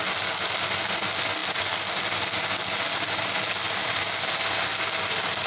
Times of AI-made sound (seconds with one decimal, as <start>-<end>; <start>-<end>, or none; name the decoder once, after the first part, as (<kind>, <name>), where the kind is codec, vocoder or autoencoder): none